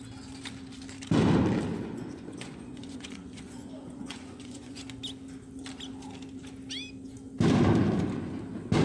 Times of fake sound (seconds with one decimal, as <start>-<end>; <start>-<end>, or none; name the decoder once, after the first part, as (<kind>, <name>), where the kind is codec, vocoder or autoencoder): 1.7-4.8 (vocoder, Vocos)